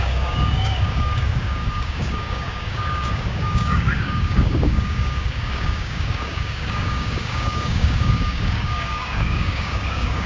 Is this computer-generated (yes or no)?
yes